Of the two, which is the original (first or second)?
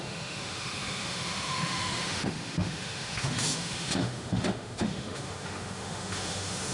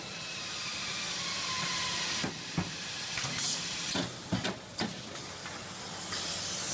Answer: second